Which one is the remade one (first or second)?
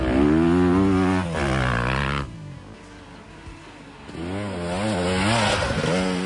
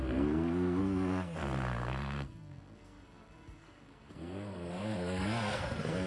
second